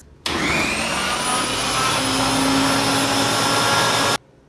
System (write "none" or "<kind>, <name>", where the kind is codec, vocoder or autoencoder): none